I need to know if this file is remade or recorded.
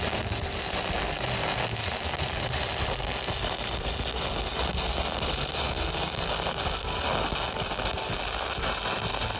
recorded